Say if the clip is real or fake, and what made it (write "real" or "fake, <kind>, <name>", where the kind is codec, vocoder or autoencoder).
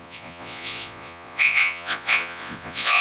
fake, vocoder, Vocos